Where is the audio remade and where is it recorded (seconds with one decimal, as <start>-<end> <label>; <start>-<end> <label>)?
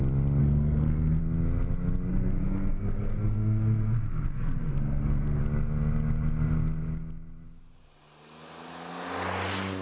0.0-0.4 recorded; 0.4-1.2 remade; 1.2-2.1 recorded; 2.1-5.4 remade; 5.4-9.8 recorded